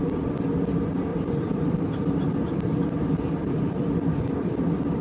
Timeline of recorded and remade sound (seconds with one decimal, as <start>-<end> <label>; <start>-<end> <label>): 0.0-1.1 recorded; 1.1-1.7 remade; 1.7-2.8 recorded; 2.8-3.8 remade; 3.8-5.0 recorded